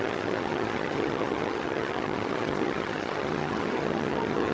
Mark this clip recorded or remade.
remade